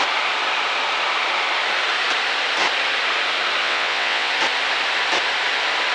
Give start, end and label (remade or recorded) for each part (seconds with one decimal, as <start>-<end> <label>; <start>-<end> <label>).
0.0-3.6 recorded; 3.6-4.3 remade; 4.3-5.9 recorded